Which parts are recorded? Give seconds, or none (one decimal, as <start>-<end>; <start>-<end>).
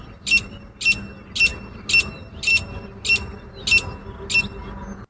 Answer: 0.0-5.1